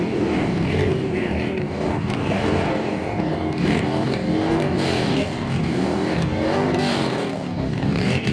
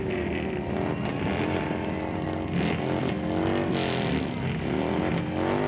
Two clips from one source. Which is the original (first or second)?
second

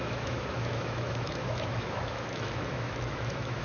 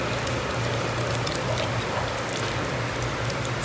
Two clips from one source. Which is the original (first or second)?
second